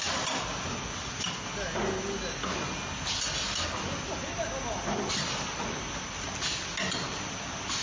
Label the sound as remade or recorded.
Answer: recorded